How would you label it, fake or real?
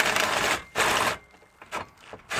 real